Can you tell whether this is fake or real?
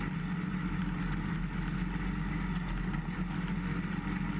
real